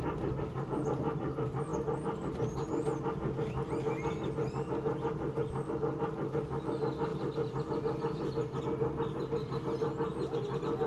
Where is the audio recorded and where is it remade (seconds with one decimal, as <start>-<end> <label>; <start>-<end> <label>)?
0.0-10.9 recorded